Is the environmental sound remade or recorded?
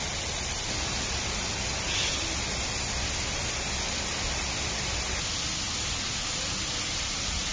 recorded